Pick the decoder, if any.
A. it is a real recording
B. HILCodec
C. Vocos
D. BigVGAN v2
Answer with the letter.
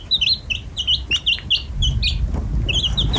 A